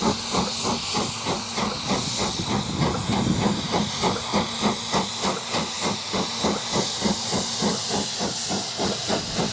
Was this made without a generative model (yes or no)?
yes